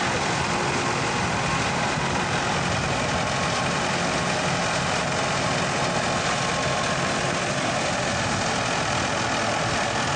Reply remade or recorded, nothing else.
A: recorded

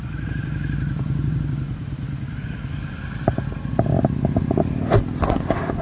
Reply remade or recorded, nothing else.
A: recorded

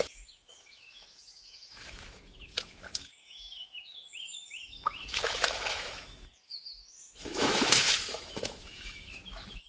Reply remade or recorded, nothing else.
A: remade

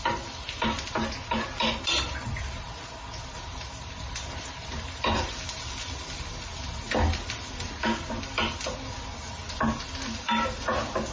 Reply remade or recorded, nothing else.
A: recorded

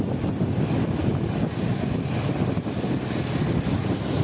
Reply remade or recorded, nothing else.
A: recorded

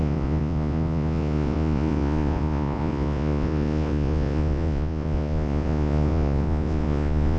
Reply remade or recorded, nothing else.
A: remade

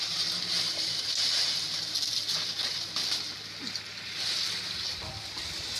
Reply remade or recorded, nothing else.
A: recorded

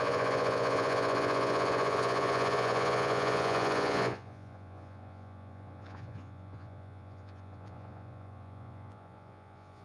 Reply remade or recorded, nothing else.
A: remade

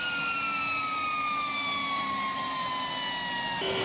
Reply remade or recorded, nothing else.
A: recorded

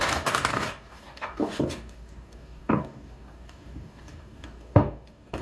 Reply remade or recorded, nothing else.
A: remade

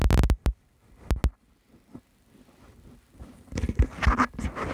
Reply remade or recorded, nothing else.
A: recorded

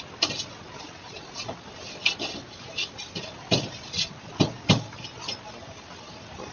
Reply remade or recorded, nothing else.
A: recorded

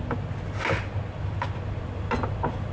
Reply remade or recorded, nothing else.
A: recorded